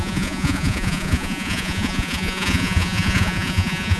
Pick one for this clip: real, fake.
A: fake